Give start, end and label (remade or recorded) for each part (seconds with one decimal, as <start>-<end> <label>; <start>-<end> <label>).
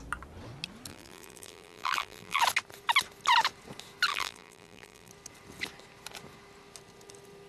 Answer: 0.0-0.9 recorded; 0.9-2.4 remade; 2.4-4.1 recorded; 4.1-5.1 remade; 5.1-7.5 recorded